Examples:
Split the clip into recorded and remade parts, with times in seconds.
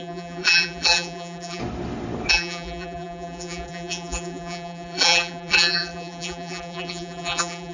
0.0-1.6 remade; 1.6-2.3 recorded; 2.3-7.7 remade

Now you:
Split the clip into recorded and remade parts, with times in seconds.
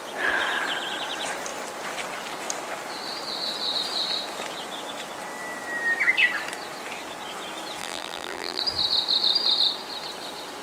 0.0-7.8 recorded; 7.8-8.6 remade; 8.6-10.6 recorded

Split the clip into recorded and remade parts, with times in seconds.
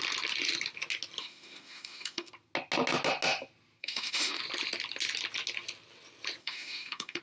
0.0-1.2 recorded; 1.2-2.3 remade; 2.3-3.8 recorded; 3.8-4.4 remade; 4.4-6.4 recorded; 6.4-7.2 remade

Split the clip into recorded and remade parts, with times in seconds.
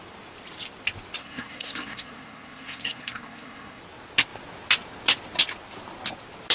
0.0-1.2 recorded; 1.2-3.8 remade; 3.8-6.5 recorded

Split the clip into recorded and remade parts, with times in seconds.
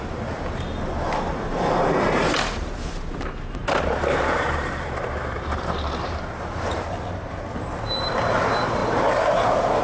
0.0-1.3 recorded; 1.3-6.2 remade; 6.2-8.8 recorded; 8.8-9.3 remade; 9.3-9.8 recorded